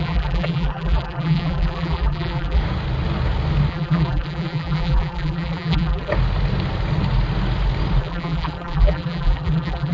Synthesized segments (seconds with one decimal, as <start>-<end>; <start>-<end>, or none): 0.0-2.6; 3.7-6.1; 8.0-9.9